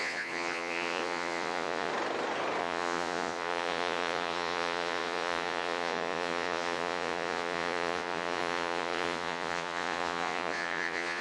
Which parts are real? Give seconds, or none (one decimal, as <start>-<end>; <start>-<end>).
1.9-2.6